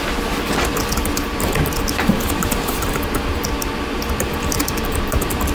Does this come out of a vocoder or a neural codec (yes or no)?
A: no